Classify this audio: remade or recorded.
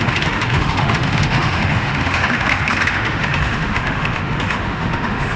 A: remade